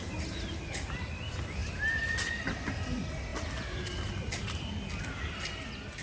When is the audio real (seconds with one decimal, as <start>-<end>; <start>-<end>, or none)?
0.0-6.0